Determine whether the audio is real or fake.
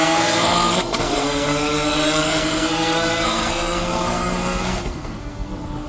fake